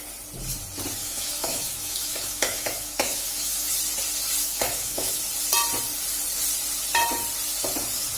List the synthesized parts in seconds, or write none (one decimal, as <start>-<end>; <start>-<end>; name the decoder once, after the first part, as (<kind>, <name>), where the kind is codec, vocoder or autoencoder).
1.0-3.7 (autoencoder, DAC-VAE); 4.4-5.2